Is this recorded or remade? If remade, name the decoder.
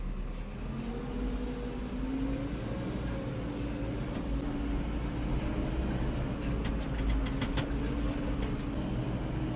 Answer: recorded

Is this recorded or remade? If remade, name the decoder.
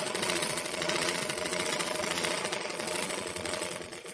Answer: remade, vocoder, Vocos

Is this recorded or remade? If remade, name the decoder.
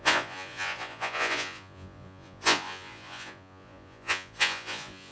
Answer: remade, vocoder, Vocos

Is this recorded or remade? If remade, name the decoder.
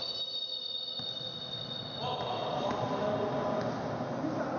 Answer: recorded